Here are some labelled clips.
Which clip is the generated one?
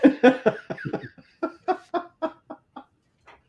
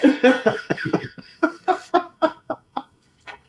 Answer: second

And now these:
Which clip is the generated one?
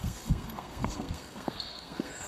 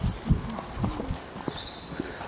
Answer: first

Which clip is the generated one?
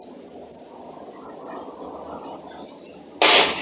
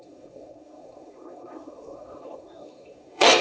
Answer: second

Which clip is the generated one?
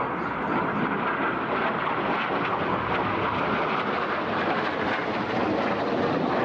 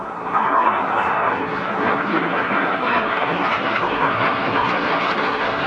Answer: second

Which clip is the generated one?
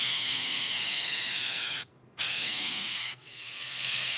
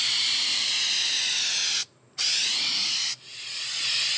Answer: first